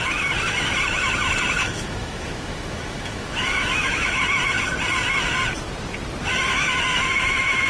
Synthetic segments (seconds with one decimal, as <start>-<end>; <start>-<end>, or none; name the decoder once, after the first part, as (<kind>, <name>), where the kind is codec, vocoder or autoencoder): 1.6-4.2 (autoencoder, DAC-VAE); 6.3-7.7